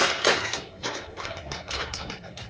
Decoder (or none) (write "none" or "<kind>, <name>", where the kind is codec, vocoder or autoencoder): codec, SNAC